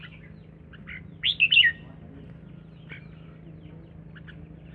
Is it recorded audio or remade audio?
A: recorded